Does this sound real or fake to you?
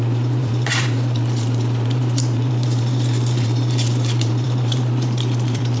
fake